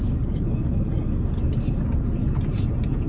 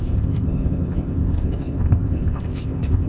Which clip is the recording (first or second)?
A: first